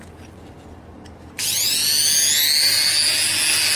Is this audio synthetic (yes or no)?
no